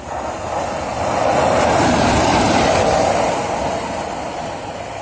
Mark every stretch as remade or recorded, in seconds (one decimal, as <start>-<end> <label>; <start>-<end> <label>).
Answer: 0.0-5.0 recorded